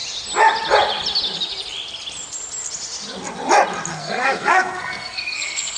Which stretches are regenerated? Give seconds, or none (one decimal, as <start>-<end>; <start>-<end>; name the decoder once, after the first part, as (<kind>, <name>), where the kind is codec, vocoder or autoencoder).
3.9-5.8 (codec, SNAC)